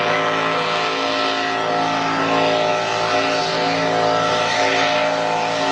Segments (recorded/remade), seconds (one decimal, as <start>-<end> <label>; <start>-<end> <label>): 0.0-5.7 recorded